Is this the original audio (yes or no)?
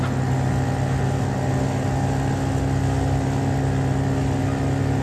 yes